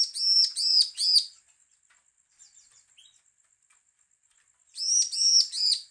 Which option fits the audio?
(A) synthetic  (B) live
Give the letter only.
B